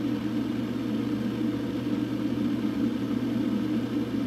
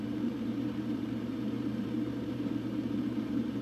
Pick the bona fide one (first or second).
first